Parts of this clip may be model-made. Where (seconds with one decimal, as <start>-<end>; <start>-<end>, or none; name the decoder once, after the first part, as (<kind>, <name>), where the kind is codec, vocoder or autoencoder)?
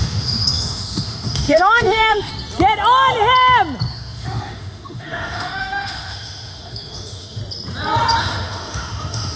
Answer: 0.0-2.3 (autoencoder, DAC-VAE); 3.9-7.4; 8.2-9.4